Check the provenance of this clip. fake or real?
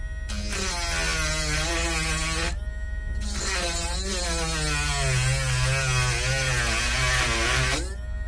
real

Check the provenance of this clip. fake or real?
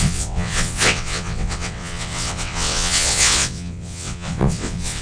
fake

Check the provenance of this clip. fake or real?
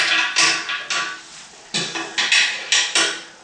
real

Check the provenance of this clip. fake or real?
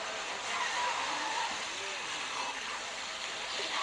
real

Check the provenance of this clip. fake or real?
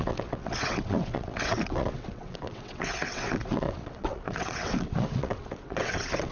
fake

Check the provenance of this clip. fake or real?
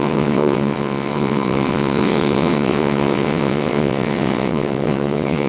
fake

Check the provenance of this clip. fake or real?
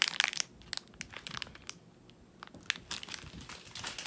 real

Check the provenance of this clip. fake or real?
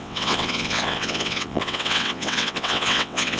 fake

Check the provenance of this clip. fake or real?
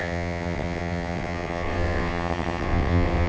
fake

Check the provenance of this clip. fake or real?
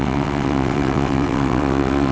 fake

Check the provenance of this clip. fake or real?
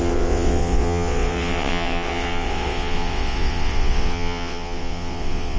fake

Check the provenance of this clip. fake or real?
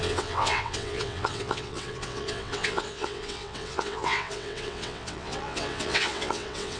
fake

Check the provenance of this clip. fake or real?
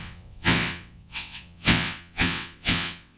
fake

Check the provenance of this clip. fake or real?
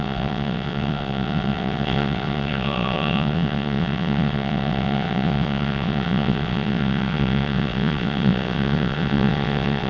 fake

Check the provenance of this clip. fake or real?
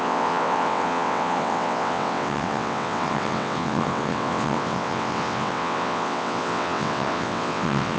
fake